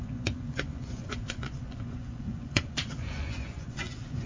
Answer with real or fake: fake